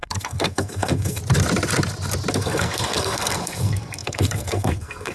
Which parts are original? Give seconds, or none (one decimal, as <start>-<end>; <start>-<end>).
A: 1.2-2.3